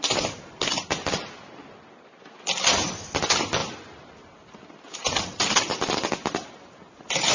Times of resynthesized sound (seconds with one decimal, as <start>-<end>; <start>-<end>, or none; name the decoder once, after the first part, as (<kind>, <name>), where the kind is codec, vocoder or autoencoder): none